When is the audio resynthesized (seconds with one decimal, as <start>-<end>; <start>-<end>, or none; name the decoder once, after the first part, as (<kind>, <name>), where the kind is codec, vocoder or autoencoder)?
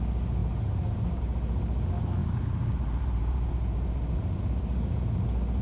0.4-1.2 (vocoder, BigVGAN v2); 2.2-5.0